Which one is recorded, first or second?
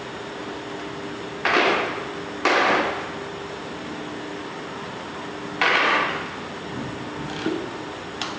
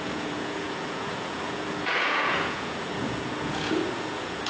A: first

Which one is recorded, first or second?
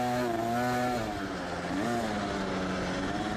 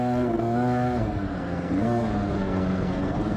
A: first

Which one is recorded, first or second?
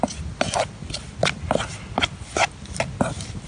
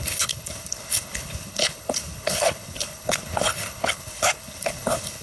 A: first